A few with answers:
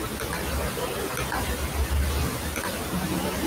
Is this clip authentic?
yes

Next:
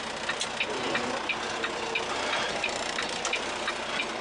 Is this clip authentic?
yes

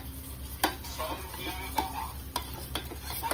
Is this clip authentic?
yes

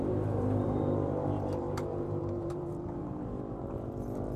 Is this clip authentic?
no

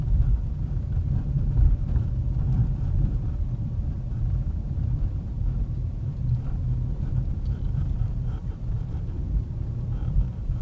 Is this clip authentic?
no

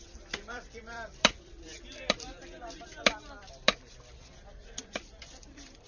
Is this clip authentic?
no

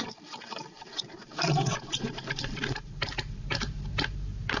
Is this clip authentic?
no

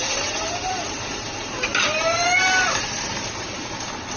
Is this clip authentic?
no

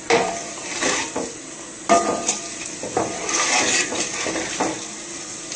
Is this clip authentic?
yes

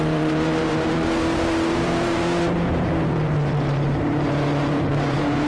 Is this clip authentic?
no